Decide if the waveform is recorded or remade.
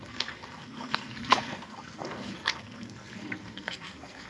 remade